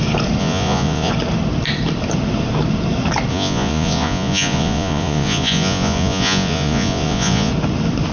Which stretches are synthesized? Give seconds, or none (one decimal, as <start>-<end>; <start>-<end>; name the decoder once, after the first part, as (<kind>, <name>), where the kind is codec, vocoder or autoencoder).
0.4-1.1 (vocoder, Vocos); 3.3-7.5